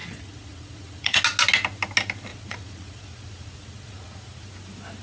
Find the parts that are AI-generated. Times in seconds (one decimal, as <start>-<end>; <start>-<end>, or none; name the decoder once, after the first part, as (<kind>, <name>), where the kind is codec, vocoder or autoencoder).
0.0-1.2 (vocoder, Vocos); 2.3-4.5